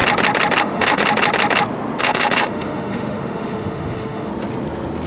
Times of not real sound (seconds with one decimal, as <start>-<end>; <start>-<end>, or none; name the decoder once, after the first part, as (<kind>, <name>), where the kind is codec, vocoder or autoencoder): 0.6-1.0 (autoencoder, DAC-VAE); 2.0-4.3

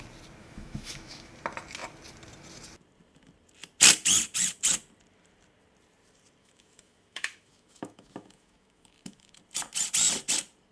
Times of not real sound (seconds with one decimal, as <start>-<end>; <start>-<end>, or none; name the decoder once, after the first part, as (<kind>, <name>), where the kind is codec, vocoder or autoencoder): 0.4-1.3 (autoencoder, DAC-VAE); 6.4-9.4

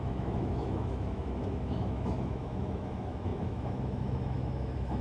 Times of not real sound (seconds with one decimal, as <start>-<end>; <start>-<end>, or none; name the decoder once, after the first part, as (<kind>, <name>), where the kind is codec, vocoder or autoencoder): 0.0-5.0 (autoencoder, DAC-VAE)

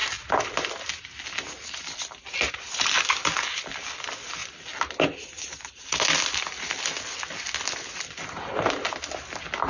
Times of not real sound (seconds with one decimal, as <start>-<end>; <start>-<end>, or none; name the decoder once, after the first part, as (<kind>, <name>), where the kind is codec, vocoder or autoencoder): none

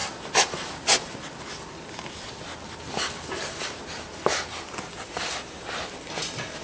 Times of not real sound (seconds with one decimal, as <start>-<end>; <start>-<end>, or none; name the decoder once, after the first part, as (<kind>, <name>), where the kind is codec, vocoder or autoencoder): none

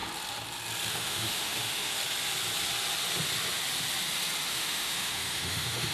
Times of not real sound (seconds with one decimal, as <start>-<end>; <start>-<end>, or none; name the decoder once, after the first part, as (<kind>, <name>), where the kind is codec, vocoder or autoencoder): 0.9-2.0 (autoencoder, DAC-VAE); 4.5-5.9

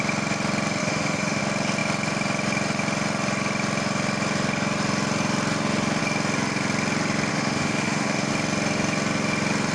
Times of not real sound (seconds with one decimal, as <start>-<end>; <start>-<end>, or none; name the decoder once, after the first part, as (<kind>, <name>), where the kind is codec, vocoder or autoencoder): 0.8-1.4 (autoencoder, DAC-VAE); 7.3-8.3

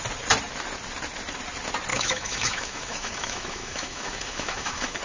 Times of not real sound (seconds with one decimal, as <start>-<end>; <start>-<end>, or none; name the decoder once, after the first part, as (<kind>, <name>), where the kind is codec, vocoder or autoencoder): 1.9-5.0 (autoencoder, DAC-VAE)